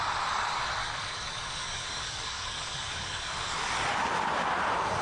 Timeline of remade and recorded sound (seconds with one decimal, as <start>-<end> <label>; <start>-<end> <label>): 0.0-0.8 recorded; 0.8-3.8 remade; 3.8-5.0 recorded